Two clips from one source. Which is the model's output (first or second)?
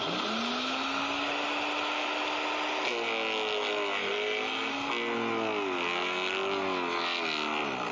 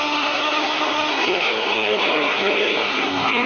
second